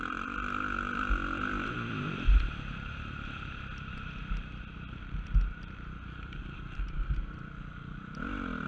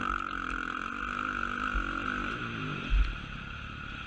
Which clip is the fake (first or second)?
first